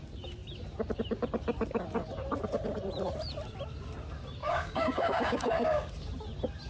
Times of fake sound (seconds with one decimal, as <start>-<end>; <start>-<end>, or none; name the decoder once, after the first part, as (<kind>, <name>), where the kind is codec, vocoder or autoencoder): 4.4-5.9 (codec, DAC)